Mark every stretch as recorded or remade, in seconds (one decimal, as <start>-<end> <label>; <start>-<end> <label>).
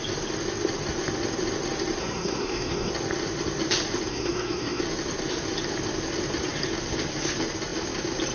0.0-2.0 recorded; 2.0-2.9 remade; 2.9-4.1 recorded; 4.1-4.8 remade; 4.8-8.3 recorded